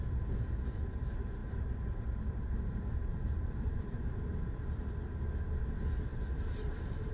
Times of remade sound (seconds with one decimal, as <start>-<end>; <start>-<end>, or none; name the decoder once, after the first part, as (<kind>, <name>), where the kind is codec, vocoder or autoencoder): 3.4-3.9 (vocoder, BigVGAN v2); 6.1-7.1